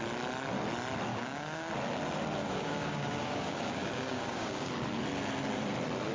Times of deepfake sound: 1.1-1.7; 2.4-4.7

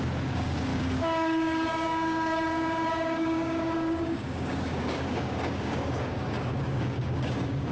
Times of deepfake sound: 0.0-7.7

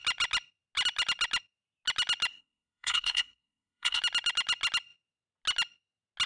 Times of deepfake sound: 2.3-4.0